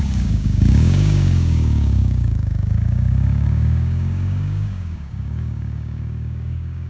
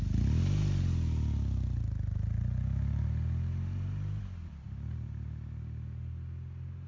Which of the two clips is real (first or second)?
second